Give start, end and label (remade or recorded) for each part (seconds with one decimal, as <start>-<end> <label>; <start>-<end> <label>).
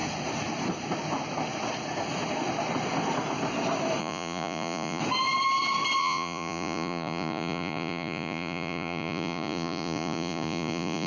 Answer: 0.0-4.0 recorded; 4.0-5.0 remade; 5.0-6.0 recorded; 6.0-11.1 remade